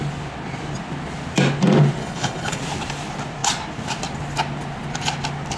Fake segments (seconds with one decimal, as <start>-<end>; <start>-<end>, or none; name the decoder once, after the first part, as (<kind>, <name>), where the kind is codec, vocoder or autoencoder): 2.0-2.6 (codec, HILCodec)